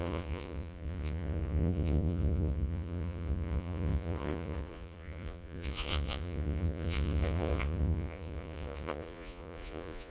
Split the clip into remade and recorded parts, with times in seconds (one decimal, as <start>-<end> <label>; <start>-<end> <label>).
0.0-10.1 remade